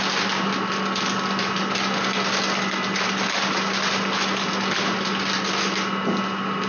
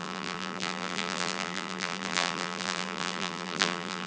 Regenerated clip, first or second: second